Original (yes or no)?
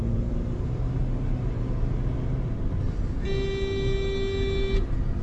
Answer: yes